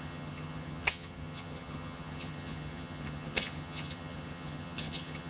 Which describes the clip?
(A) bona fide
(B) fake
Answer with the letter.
B